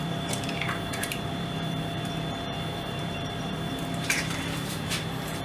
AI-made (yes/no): yes